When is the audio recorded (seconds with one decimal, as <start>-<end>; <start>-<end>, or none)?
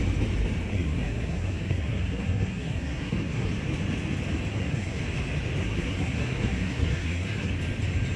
0.0-0.7; 3.5-4.5; 5.0-5.6; 7.5-8.2